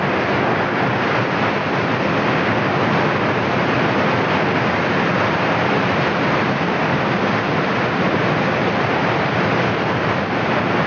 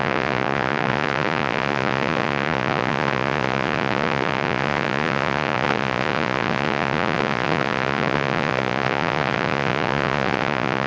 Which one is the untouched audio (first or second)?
first